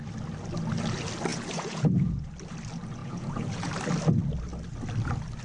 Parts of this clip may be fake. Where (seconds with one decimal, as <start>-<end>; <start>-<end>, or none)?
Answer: 1.3-2.3; 3.0-3.7